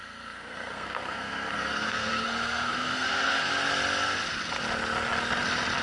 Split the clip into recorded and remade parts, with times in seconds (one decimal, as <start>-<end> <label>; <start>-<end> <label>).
0.0-3.5 remade; 3.5-5.8 recorded